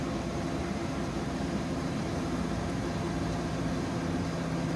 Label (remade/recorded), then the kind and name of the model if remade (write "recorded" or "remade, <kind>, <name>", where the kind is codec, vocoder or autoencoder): remade, vocoder, BigVGAN v2